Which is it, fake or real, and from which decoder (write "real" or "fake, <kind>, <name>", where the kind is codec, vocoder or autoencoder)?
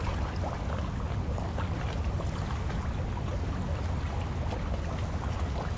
real